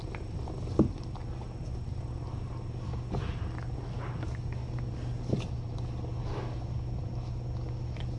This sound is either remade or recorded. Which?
recorded